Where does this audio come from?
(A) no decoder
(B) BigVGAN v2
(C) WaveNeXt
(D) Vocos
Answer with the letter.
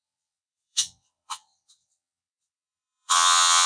C